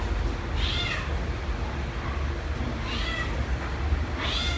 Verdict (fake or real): real